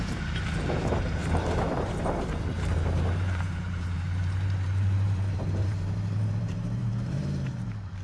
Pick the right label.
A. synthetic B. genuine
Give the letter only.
A